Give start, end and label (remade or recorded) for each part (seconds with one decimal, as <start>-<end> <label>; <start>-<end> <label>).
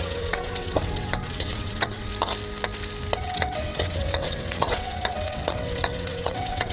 0.0-2.1 remade; 2.1-3.2 recorded; 3.2-6.7 remade